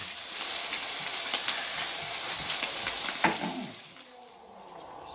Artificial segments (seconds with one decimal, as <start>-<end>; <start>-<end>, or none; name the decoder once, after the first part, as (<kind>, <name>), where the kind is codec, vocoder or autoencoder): none